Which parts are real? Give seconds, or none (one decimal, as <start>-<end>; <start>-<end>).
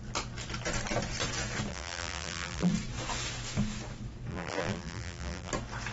0.0-1.7; 2.7-4.3; 5.5-5.9